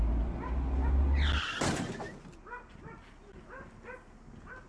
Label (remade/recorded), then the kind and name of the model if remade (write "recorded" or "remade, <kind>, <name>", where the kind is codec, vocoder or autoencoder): recorded